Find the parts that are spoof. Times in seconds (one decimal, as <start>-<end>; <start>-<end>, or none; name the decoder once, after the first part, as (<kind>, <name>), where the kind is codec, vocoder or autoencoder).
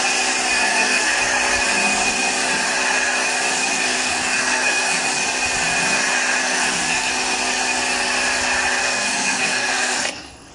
0.7-1.2 (codec, SNAC); 3.7-5.0; 6.4-7.1; 8.8-10.5